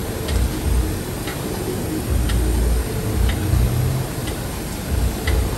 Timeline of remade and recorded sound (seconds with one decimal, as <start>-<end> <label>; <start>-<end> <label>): 0.0-5.6 recorded